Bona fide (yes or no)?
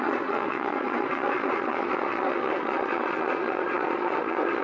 no